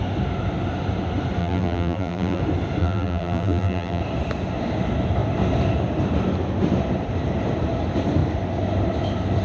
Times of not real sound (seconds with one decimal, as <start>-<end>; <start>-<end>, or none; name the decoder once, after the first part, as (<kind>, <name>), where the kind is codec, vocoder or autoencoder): 1.4-2.4 (vocoder, BigVGAN v2); 2.8-4.0